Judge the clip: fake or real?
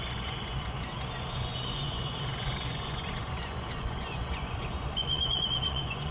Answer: fake